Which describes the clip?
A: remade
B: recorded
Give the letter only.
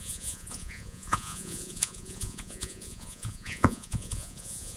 A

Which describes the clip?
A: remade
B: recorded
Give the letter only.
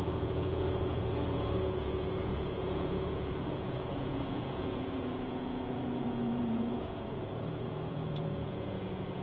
A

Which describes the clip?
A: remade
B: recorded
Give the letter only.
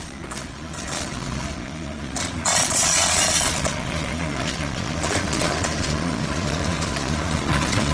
A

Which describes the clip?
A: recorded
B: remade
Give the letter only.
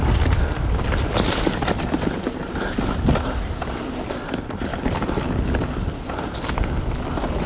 A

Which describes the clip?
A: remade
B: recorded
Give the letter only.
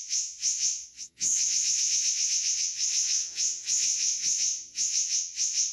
A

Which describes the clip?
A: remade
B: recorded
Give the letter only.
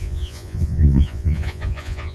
A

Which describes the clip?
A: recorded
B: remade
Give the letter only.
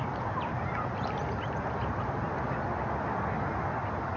A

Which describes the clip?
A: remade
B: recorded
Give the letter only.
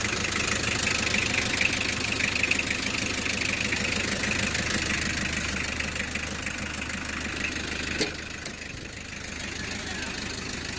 B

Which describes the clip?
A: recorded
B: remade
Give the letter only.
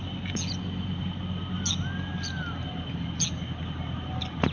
A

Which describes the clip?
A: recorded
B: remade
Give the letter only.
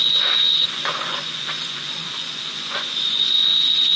B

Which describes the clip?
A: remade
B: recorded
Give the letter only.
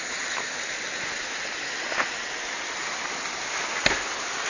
B